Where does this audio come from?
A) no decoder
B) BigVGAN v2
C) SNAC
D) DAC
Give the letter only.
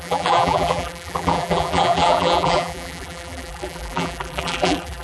B